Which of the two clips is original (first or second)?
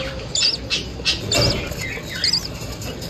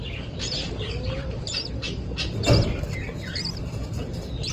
first